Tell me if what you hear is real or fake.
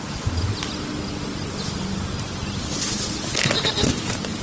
real